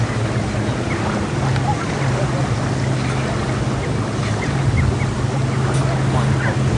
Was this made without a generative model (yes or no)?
yes